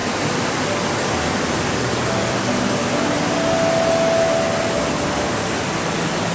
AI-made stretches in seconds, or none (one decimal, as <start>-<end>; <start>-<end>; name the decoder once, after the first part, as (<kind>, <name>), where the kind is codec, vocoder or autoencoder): none